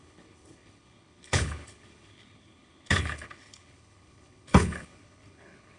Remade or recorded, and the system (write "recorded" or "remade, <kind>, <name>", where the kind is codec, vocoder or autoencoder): remade, codec, HILCodec